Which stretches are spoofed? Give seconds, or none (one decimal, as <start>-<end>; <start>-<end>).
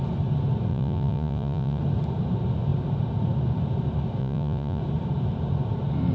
0.7-1.8; 4.2-4.8